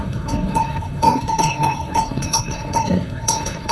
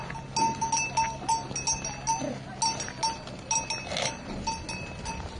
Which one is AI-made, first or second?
first